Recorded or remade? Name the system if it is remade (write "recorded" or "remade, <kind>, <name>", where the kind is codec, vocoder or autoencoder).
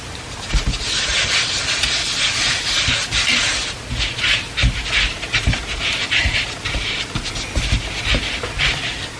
recorded